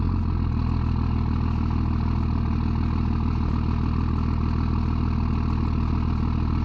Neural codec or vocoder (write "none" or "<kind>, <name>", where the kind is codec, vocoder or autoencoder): none